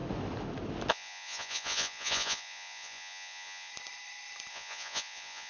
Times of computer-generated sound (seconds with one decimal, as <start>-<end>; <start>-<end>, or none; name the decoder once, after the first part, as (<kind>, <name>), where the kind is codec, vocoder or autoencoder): 0.9-3.7 (vocoder, Vocos); 4.5-5.5